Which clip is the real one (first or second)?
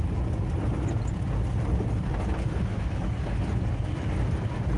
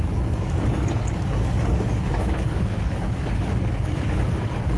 first